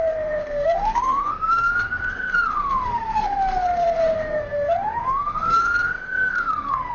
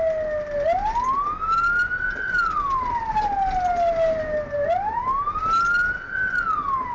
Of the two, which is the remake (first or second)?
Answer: first